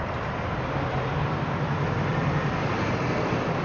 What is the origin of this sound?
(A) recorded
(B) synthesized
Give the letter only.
A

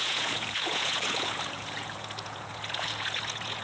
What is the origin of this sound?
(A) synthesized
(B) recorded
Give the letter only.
A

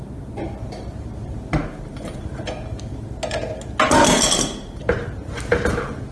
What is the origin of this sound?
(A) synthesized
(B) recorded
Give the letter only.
B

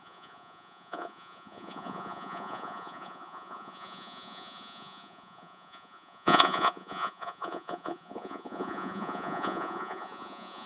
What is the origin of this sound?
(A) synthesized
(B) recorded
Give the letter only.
A